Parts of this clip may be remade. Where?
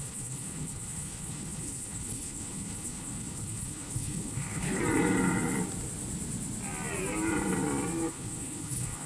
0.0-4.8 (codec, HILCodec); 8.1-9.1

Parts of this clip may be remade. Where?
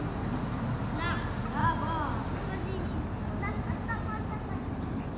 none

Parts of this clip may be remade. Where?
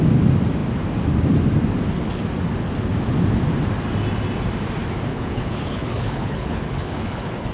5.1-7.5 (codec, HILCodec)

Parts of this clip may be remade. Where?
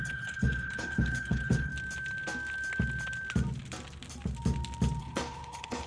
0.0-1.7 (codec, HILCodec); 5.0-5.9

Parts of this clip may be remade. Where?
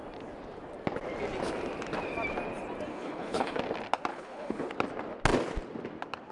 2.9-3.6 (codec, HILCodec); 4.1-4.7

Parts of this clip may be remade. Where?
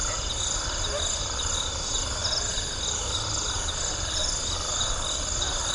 none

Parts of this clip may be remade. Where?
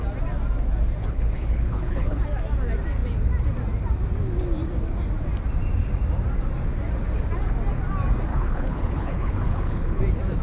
1.0-2.2 (codec, HILCodec); 8.3-10.0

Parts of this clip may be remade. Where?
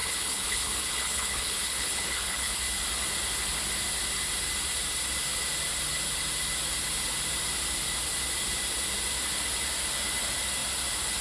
0.0-2.6 (codec, HILCodec)